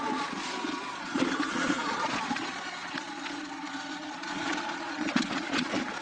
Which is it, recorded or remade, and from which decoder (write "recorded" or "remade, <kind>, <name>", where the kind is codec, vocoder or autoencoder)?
remade, vocoder, Vocos